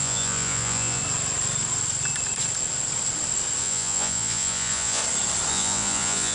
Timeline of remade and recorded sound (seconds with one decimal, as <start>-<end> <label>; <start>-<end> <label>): 0.0-1.0 remade; 1.0-3.6 recorded; 3.6-5.0 remade; 5.0-5.5 recorded; 5.5-6.3 remade